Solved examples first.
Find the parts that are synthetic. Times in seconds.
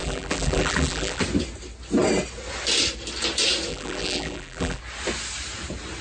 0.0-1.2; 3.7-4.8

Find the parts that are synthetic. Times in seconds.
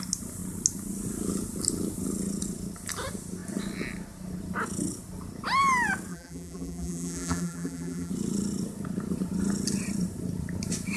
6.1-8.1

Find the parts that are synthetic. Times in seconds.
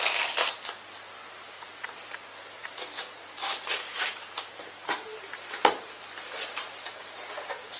1.2-1.8; 2.6-4.0; 5.1-7.8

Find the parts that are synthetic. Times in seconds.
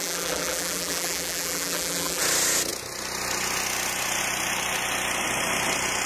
0.0-2.2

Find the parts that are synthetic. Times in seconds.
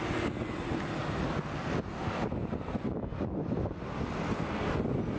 none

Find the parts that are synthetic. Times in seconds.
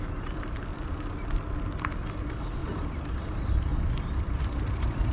0.0-0.7; 2.1-5.1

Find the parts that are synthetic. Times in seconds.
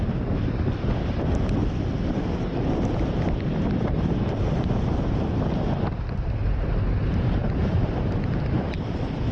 0.0-9.3